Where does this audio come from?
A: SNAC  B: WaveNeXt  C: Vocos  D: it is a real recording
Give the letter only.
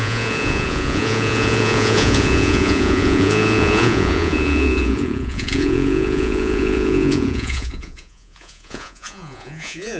C